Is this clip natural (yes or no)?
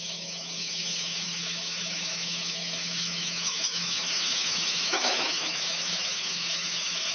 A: no